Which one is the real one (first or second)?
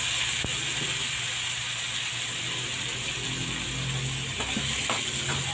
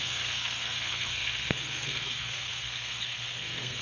first